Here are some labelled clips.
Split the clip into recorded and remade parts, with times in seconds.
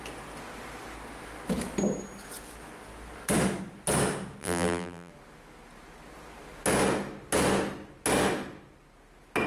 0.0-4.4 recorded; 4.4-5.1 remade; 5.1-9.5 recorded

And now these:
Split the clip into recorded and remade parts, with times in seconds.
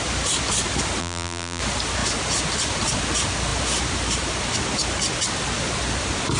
0.0-1.0 recorded; 1.0-1.6 remade; 1.6-6.4 recorded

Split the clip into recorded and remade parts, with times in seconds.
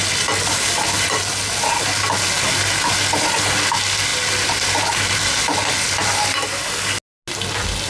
0.0-7.9 recorded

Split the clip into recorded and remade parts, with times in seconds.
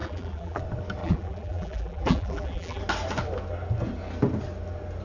0.0-0.6 remade; 0.6-1.0 recorded; 1.0-2.8 remade; 2.8-5.0 recorded